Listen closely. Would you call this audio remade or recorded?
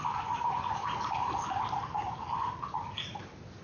remade